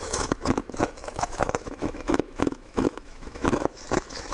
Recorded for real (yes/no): no